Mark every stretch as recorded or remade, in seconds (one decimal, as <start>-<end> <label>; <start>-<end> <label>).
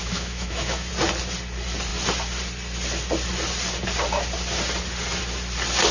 0.0-0.9 remade; 0.9-5.9 recorded